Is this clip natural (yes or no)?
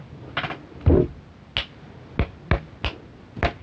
yes